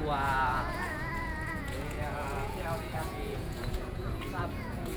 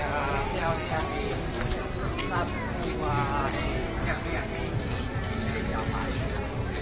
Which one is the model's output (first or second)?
first